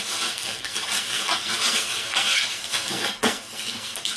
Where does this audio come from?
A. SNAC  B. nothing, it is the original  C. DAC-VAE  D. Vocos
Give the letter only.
A